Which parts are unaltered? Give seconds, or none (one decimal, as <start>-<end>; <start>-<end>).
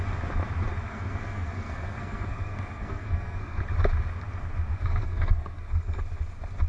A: 0.0-0.9; 3.6-4.7; 6.0-6.7